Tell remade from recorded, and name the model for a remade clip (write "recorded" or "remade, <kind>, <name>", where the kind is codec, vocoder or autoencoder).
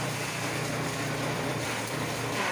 remade, vocoder, BigVGAN v2